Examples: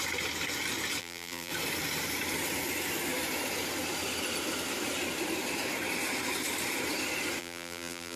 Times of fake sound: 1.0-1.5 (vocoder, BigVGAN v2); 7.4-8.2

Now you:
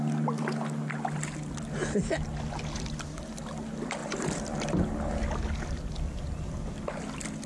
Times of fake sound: 4.0-4.8 (vocoder, BigVGAN v2)

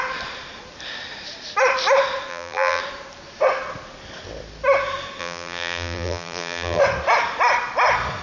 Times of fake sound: 2.3-2.8 (vocoder, BigVGAN v2); 5.2-6.8